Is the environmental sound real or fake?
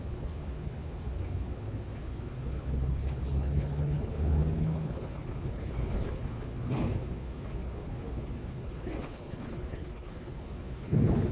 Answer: fake